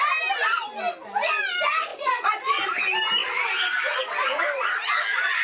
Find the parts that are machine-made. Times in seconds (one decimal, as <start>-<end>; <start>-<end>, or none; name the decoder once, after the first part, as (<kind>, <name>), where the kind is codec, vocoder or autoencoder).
1.9-2.6 (vocoder, Vocos)